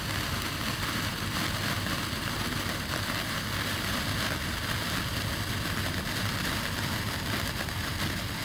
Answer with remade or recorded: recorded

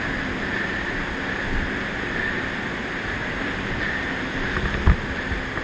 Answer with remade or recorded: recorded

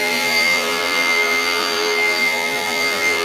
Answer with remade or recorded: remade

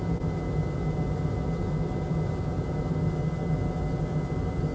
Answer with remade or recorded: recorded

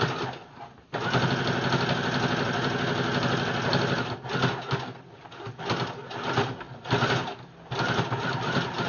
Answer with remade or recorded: recorded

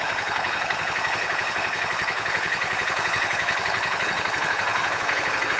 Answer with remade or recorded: remade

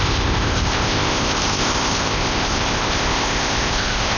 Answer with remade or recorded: remade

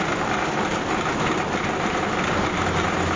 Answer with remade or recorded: recorded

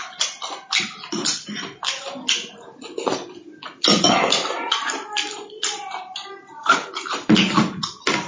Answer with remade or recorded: recorded